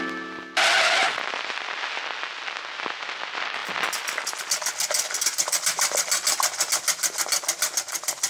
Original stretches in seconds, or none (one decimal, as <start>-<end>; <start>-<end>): 0.0-8.3